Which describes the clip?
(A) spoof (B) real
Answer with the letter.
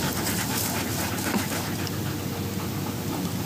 B